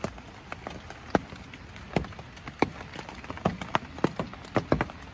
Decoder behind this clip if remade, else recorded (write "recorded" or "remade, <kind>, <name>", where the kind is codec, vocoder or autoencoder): recorded